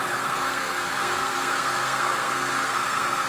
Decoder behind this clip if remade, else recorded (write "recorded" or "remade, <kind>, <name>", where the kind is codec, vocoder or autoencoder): remade, codec, SNAC